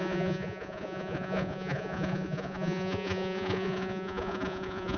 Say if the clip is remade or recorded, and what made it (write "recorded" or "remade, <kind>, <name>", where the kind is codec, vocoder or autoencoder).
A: remade, vocoder, Vocos